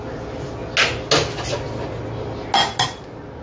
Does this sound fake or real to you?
real